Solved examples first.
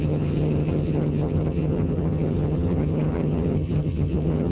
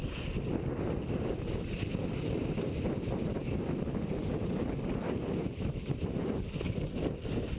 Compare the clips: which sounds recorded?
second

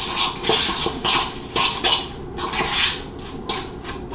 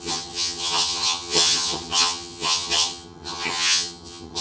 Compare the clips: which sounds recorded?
first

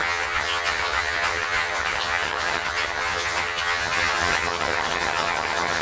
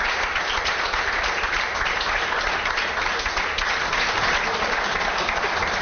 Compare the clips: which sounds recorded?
second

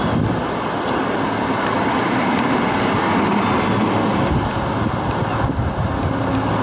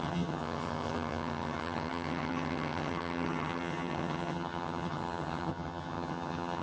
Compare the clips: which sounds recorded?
first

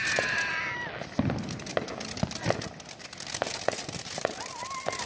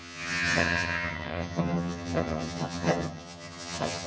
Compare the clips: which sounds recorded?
first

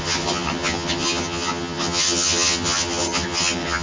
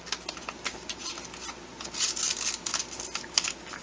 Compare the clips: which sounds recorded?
second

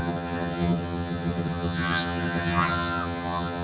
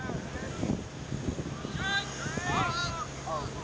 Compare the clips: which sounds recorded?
second